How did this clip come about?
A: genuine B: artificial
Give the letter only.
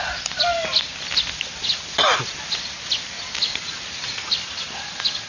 A